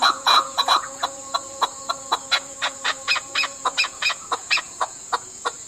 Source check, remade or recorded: remade